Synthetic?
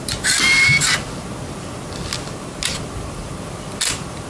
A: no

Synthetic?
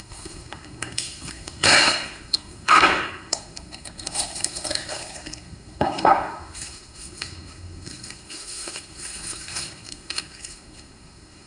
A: yes